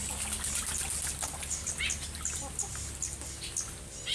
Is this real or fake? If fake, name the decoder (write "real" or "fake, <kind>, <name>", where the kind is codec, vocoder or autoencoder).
real